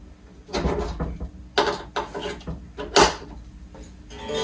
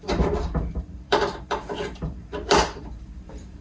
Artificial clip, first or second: second